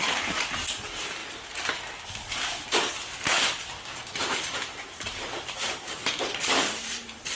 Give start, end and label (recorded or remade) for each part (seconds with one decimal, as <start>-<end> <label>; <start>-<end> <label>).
0.0-1.2 remade; 1.2-4.2 recorded; 4.2-6.0 remade; 6.0-6.8 recorded; 6.8-7.4 remade